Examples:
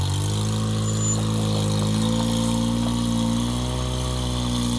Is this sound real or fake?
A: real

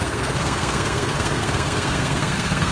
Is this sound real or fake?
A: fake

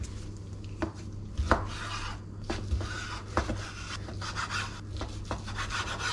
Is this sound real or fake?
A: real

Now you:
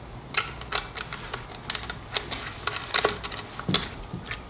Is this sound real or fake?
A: real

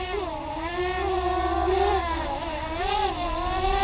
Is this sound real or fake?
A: real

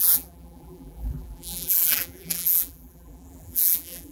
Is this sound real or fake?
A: fake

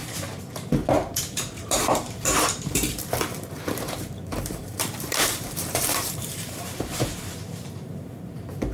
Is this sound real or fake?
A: fake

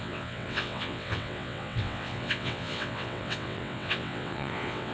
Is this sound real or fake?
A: fake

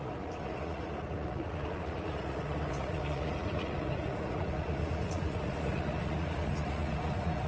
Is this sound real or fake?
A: fake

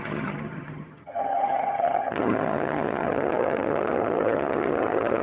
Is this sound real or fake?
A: fake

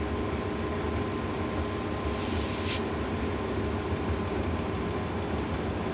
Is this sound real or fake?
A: real